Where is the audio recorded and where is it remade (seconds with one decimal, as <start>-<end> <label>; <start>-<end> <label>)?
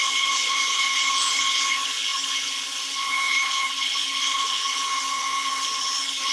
0.0-6.3 remade